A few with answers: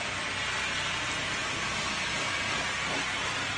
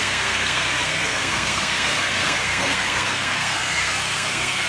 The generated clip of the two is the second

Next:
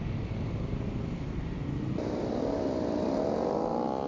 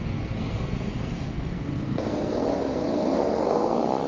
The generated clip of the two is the second